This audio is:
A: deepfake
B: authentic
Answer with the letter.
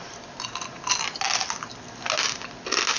B